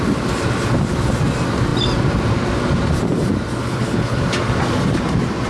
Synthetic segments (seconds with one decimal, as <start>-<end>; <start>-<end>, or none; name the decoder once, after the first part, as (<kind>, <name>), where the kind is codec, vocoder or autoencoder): 3.6-4.2 (codec, HILCodec)